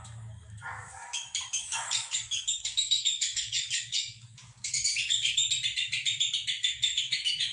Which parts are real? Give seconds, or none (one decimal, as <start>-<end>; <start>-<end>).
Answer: 5.4-6.6